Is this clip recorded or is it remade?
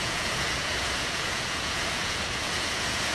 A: remade